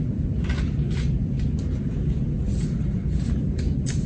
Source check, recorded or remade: remade